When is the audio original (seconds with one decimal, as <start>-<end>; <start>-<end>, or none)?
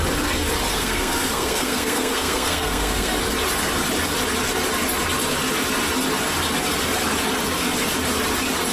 0.0-0.7; 3.2-8.7